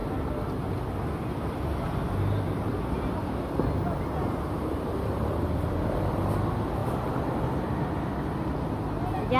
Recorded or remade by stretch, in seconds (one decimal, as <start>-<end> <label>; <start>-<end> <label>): 0.0-9.4 recorded